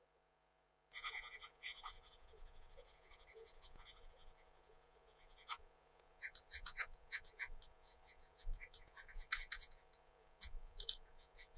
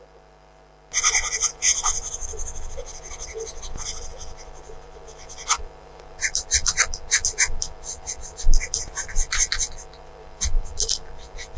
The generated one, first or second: first